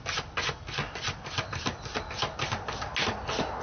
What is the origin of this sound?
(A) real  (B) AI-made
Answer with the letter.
A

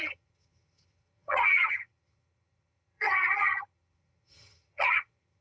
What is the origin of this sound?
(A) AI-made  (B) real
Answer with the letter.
A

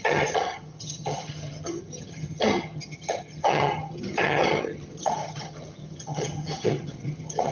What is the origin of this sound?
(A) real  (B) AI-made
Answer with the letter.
B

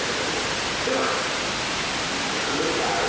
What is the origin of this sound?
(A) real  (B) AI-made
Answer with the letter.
A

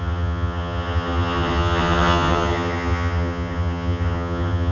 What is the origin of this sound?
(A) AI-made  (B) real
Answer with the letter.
A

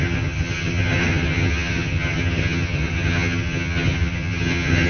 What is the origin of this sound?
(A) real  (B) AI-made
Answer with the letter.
B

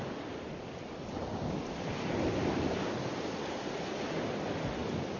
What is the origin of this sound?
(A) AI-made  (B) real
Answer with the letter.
B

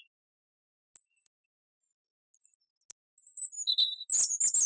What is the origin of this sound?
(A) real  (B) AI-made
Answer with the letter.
A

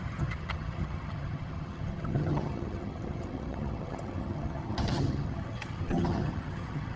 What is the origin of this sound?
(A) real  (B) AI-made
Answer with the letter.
B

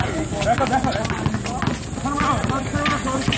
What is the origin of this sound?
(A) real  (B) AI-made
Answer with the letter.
A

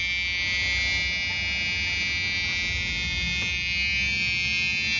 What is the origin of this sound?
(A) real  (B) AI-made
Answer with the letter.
A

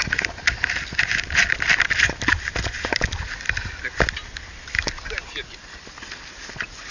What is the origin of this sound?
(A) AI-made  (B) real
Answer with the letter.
B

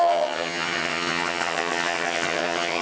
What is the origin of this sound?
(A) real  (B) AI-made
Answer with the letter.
B